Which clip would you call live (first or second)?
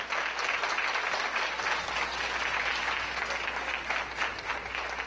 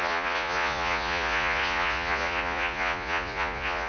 first